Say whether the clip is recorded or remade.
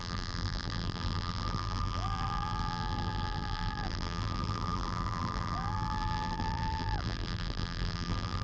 remade